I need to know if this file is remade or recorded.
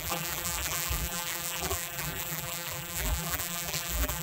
remade